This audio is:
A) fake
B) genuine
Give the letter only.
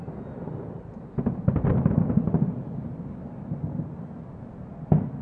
B